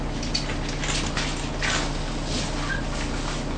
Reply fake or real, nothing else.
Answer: real